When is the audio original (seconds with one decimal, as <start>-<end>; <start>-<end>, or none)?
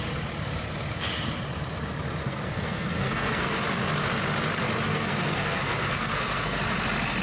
0.0-2.2; 3.6-4.9; 6.6-7.2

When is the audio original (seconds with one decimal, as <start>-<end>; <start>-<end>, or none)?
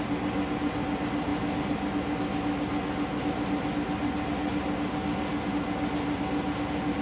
0.0-7.0